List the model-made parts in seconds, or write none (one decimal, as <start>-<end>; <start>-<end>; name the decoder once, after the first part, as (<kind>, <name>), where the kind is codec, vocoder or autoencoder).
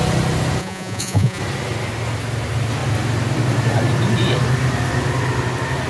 0.6-1.4 (vocoder, Vocos)